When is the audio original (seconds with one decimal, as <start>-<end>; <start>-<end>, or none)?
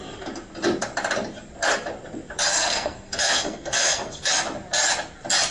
0.0-2.5; 4.3-5.5